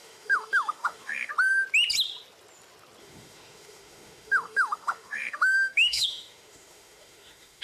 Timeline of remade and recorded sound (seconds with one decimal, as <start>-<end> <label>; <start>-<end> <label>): 0.0-1.3 remade; 1.3-3.0 recorded; 3.0-7.6 remade